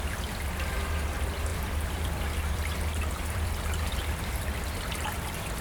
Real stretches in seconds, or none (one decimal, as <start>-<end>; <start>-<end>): 0.0-1.5; 4.6-5.6